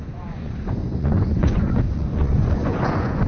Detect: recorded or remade remade